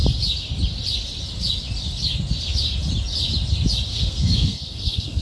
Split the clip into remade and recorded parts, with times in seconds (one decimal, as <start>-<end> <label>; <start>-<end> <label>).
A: 0.0-3.9 recorded; 3.9-5.2 remade